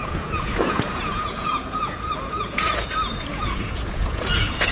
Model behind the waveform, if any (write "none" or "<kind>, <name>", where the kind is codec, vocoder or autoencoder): vocoder, Vocos